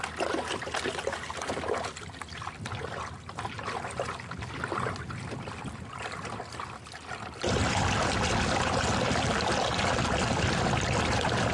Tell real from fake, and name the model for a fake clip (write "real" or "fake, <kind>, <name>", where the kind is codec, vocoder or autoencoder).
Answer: real